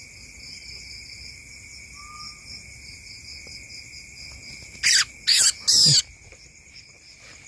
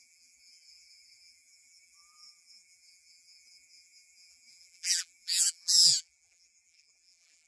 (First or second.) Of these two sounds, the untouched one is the first